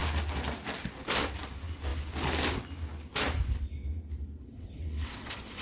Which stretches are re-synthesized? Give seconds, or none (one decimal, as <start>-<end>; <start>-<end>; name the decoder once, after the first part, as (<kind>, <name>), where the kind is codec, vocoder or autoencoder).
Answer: 4.5-5.6 (vocoder, WaveNeXt)

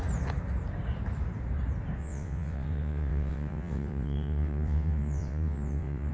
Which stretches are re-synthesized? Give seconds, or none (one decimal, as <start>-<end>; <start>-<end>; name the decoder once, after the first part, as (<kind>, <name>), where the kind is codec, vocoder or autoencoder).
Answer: 2.0-6.1 (vocoder, WaveNeXt)

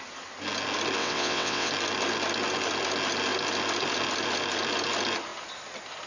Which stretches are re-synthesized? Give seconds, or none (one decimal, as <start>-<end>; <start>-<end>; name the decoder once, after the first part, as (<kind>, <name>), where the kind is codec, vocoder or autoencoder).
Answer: 1.0-1.7 (vocoder, WaveNeXt)

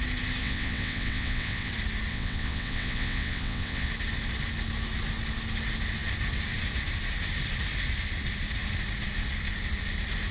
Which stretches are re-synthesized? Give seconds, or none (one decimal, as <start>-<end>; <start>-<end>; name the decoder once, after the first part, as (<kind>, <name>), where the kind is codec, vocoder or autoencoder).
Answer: 0.4-1.7 (vocoder, WaveNeXt); 2.1-3.9

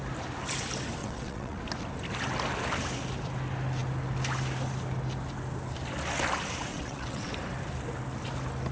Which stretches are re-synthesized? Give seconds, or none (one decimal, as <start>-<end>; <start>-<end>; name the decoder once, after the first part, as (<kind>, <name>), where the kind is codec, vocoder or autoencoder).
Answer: 1.0-1.6 (vocoder, WaveNeXt); 6.7-7.3

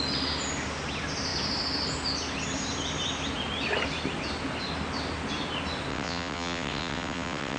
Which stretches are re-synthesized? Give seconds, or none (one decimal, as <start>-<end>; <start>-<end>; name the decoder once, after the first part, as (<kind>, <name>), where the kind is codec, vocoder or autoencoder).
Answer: 5.9-7.6 (vocoder, WaveNeXt)

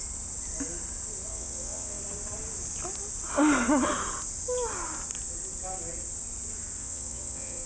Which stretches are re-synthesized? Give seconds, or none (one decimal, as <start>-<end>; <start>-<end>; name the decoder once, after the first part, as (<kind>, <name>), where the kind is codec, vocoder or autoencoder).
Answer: 1.3-2.0 (vocoder, WaveNeXt); 6.8-7.7